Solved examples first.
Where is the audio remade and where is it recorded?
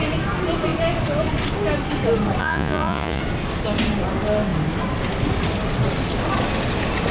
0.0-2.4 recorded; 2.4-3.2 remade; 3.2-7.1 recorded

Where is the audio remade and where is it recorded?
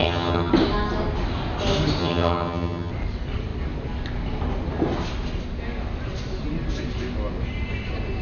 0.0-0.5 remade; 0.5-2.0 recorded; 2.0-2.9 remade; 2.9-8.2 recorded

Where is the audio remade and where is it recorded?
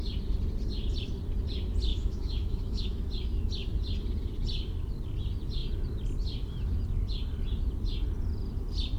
0.0-1.9 recorded; 1.9-3.1 remade; 3.1-9.0 recorded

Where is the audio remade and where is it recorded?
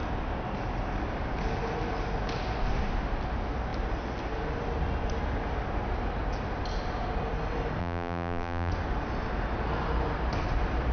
0.0-7.8 recorded; 7.8-8.7 remade; 8.7-10.9 recorded